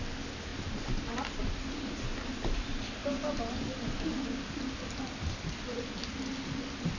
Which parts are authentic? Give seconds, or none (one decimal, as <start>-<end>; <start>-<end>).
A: 0.0-7.0